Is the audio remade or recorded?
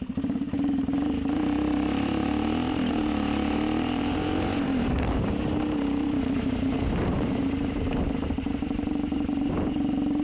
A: remade